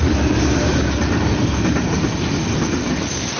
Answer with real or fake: fake